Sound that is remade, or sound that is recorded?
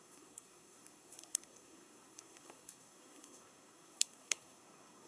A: remade